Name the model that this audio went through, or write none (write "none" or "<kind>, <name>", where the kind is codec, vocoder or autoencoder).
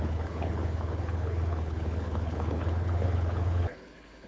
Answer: codec, HILCodec